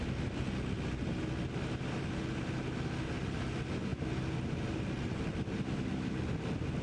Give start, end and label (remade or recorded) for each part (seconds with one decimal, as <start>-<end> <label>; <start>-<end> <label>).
0.0-6.8 recorded